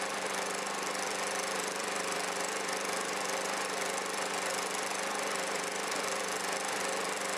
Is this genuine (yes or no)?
no